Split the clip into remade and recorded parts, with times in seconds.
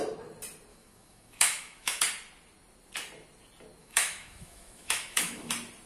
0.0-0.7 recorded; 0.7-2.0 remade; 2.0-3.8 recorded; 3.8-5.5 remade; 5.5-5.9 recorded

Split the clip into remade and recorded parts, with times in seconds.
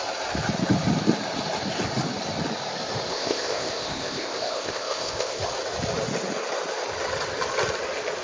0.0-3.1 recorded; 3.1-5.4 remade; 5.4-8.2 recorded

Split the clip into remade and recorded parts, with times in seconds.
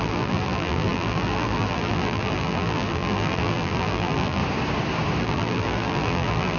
0.0-4.4 remade; 4.4-5.2 recorded; 5.2-6.6 remade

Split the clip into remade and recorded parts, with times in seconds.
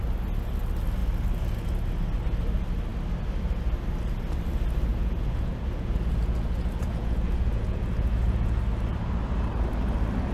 0.0-4.9 recorded; 4.9-8.6 remade; 8.6-10.3 recorded